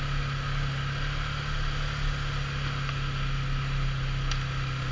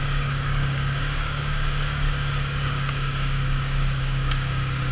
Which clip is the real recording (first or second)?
first